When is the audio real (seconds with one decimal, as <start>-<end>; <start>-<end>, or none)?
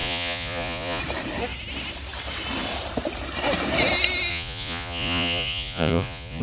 1.0-4.3